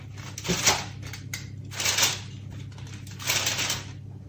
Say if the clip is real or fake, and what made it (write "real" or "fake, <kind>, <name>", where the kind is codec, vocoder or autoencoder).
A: real